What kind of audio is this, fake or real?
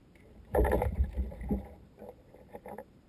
fake